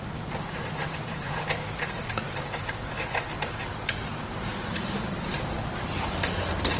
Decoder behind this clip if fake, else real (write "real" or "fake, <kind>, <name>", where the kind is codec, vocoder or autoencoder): fake, vocoder, BigVGAN v2